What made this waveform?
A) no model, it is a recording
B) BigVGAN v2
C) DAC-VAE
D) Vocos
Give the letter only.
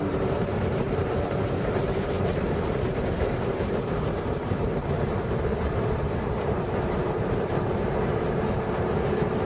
B